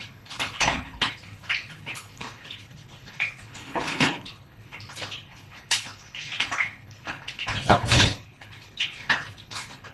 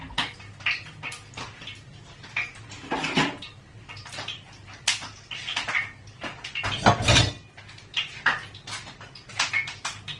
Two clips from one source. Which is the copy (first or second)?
first